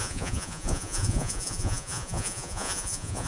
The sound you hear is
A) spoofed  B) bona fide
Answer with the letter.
A